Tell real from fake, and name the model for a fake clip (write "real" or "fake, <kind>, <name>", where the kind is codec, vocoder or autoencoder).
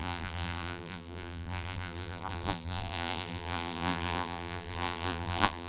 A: fake, vocoder, BigVGAN v2